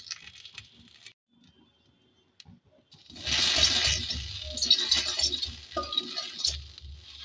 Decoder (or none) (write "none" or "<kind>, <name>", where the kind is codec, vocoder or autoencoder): none